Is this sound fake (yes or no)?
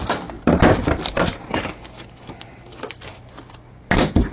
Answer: no